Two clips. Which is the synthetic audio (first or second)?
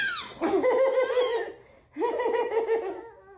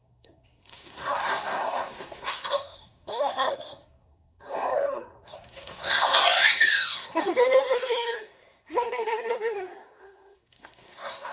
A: second